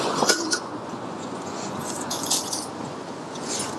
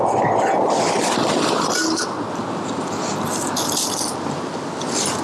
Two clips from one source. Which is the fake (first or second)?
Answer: first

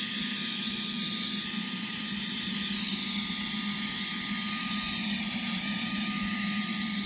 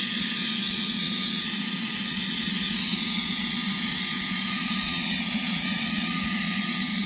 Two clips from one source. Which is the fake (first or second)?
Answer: second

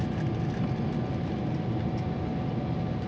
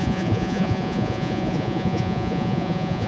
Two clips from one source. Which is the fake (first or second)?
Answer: second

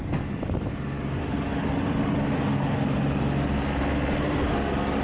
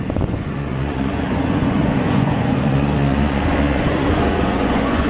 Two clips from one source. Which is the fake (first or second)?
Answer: second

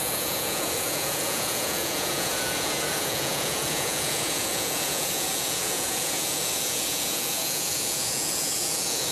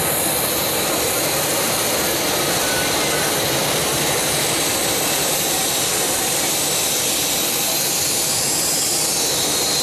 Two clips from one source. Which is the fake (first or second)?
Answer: first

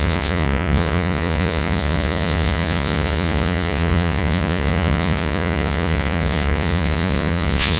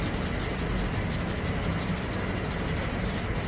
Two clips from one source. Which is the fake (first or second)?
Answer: first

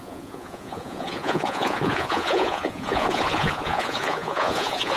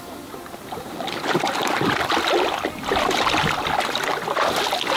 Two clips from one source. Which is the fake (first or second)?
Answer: first